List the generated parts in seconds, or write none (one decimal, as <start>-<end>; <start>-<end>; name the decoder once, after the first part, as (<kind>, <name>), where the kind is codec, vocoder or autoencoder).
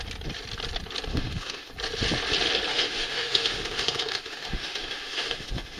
1.1-1.7 (autoencoder, DAC-VAE); 2.7-5.8